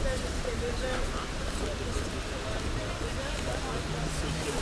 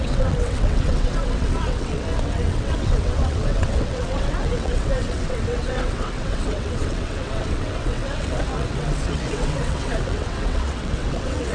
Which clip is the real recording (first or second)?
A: first